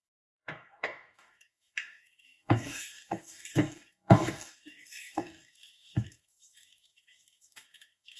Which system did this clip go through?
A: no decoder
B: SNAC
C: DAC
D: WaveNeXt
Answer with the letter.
C